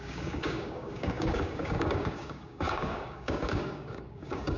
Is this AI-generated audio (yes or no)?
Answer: yes